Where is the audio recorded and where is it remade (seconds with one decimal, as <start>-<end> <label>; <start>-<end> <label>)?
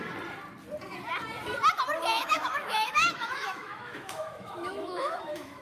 0.0-2.1 recorded; 2.1-5.6 remade